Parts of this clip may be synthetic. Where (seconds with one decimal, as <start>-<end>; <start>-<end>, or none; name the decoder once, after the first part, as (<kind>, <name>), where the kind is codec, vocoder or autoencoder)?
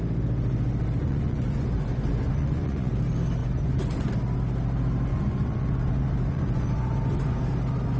1.0-2.9 (vocoder, Vocos); 3.4-4.1; 5.1-7.4